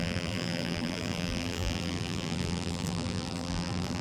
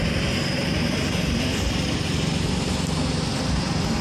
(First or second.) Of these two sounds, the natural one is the second